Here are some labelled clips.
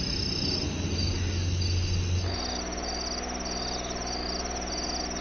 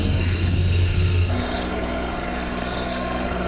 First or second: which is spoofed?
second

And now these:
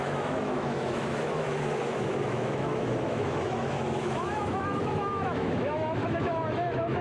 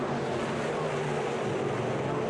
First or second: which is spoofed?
first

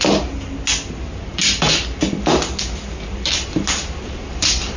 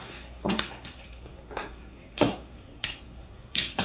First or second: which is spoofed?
second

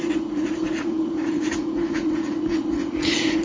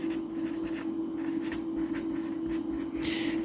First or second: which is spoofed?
first